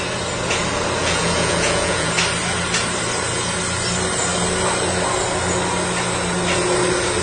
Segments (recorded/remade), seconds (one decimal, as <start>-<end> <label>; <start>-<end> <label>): 0.0-1.0 recorded; 1.0-2.1 remade; 2.1-7.2 recorded